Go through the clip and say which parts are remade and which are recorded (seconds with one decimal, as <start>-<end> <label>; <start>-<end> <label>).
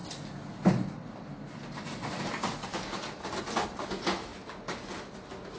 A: 0.0-3.4 recorded; 3.4-5.6 remade